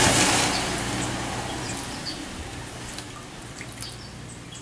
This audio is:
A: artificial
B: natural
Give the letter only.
B